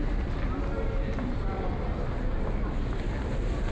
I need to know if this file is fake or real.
real